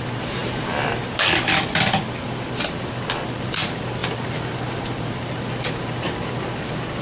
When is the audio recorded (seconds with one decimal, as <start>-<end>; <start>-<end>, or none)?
0.0-7.0